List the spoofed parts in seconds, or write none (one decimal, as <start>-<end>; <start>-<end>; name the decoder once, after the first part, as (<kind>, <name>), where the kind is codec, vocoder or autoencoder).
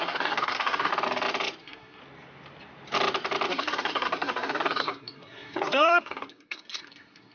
0.0-0.9 (codec, SNAC); 1.6-2.0; 3.5-7.3